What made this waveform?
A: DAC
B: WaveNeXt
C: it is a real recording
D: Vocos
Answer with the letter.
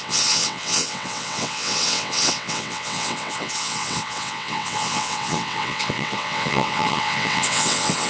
B